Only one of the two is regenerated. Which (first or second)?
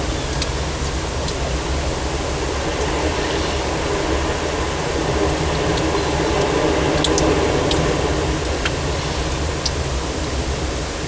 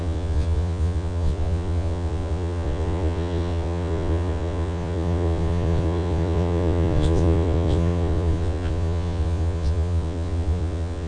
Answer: second